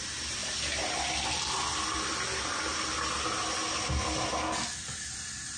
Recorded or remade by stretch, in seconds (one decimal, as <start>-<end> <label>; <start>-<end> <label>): 0.0-5.6 recorded